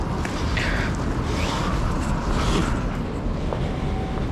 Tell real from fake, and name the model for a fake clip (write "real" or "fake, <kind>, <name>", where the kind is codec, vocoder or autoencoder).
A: real